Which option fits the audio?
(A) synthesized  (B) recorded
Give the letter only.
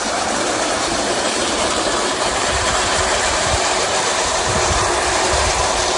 A